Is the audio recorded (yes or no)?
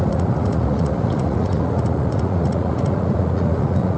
no